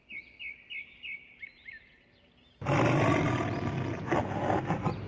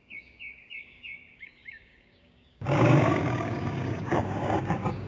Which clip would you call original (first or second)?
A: first